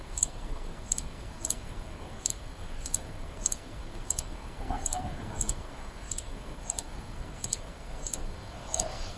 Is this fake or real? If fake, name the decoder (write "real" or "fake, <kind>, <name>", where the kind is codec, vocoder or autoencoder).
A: fake, codec, SNAC